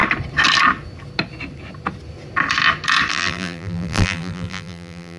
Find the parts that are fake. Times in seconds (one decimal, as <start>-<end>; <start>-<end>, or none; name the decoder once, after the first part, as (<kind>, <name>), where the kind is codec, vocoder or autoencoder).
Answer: 3.1-5.2 (vocoder, BigVGAN v2)